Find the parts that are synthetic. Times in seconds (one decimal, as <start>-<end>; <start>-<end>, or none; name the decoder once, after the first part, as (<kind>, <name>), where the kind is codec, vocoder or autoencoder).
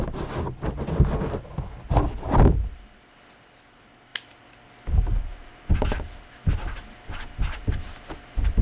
none